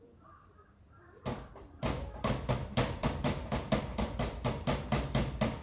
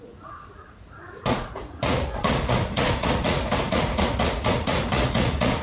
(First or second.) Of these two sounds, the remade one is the second